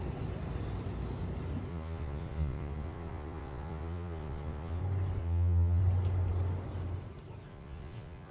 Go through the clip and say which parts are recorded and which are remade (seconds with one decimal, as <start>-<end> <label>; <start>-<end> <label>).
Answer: 0.0-1.7 recorded; 1.7-4.8 remade; 4.8-5.2 recorded; 5.2-5.8 remade; 5.8-7.5 recorded; 7.5-8.3 remade